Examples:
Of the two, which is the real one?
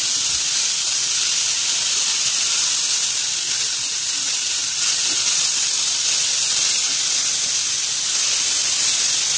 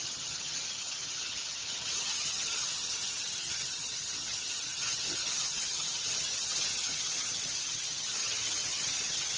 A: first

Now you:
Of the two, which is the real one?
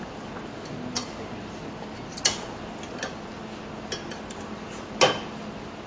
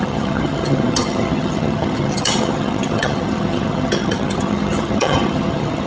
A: first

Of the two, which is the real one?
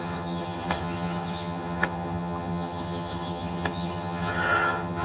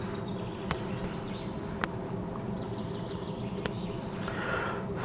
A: second